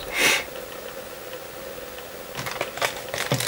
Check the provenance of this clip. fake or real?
real